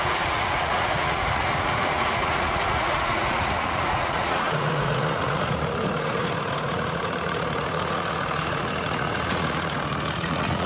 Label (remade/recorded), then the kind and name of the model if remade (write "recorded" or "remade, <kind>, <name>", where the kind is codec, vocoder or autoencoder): remade, vocoder, Vocos